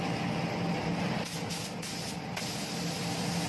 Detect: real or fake real